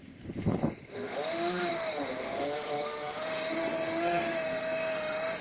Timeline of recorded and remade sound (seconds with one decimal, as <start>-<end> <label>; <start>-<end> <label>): 0.0-5.4 remade